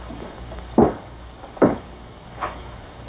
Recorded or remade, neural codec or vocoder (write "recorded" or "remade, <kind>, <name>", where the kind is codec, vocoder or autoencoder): remade, codec, DAC